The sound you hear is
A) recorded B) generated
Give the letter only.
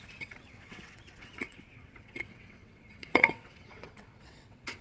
B